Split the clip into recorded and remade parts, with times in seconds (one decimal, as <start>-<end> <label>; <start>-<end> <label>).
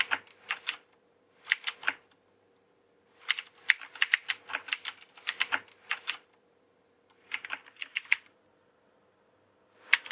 0.0-10.1 recorded